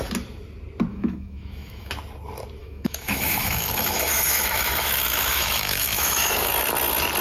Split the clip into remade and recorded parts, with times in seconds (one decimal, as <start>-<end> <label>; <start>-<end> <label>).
0.0-0.9 recorded; 0.9-1.9 remade; 1.9-2.6 recorded; 2.6-6.5 remade; 6.5-7.2 recorded